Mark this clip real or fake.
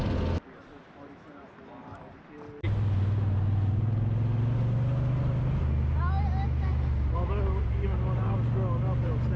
real